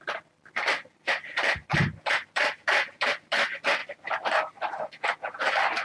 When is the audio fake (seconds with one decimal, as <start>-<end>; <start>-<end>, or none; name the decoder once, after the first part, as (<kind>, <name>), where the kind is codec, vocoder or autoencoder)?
0.0-5.8 (vocoder, BigVGAN v2)